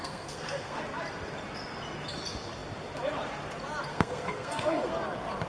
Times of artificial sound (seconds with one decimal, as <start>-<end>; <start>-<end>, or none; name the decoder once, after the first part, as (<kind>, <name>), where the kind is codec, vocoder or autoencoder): 0.0-0.8 (codec, SNAC); 3.9-4.9